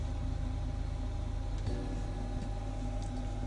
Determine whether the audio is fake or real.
real